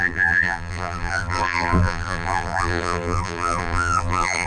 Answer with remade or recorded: remade